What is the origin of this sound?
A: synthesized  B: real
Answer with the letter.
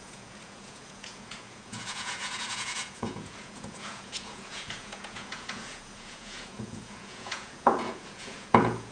A